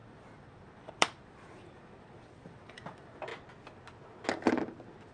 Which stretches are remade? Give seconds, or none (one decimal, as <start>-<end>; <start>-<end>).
0.0-3.3